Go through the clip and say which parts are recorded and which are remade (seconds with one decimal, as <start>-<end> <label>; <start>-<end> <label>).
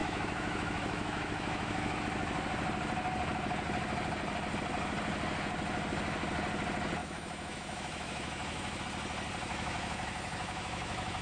0.0-2.0 remade; 2.0-7.0 recorded; 7.0-8.8 remade; 8.8-9.5 recorded; 9.5-11.2 remade